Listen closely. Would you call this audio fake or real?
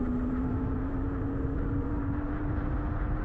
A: fake